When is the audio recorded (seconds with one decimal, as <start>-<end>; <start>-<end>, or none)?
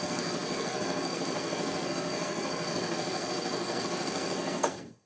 none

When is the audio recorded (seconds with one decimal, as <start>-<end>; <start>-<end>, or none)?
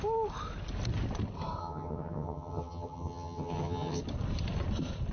0.0-1.6; 4.0-5.1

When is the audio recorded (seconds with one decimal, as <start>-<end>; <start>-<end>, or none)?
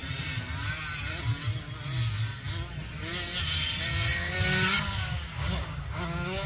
0.0-4.1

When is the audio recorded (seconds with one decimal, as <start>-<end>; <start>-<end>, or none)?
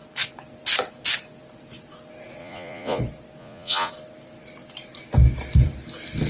0.0-2.4; 3.0-3.4; 3.9-6.3